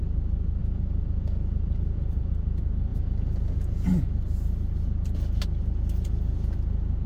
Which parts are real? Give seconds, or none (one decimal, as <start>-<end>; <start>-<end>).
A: 0.0-0.6; 2.3-2.9; 4.1-7.1